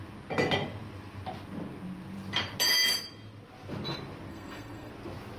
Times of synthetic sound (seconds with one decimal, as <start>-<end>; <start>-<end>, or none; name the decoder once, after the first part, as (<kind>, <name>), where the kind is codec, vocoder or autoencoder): 4.3-4.9 (codec, SNAC)